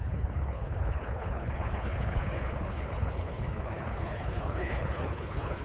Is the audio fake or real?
fake